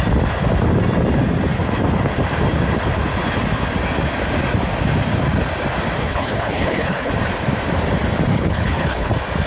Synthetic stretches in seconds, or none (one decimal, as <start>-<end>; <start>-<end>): 6.0-7.1; 8.3-9.1